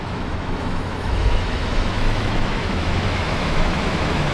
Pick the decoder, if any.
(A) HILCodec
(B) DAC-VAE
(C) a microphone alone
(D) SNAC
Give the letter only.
B